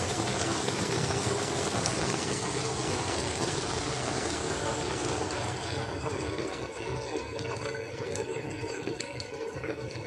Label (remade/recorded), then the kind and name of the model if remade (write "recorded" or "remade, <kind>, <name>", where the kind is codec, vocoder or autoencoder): remade, codec, SNAC